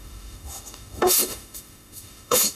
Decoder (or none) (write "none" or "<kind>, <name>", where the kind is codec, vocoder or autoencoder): autoencoder, DAC-VAE